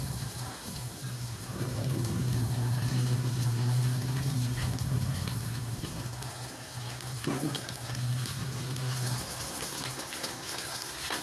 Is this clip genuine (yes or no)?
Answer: no